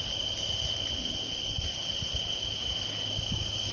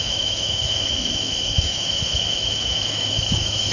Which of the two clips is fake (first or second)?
second